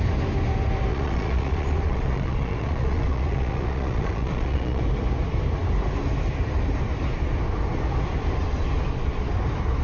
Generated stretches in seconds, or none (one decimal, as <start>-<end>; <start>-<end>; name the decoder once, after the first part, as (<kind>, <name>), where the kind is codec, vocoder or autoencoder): 0.9-4.8 (vocoder, Vocos)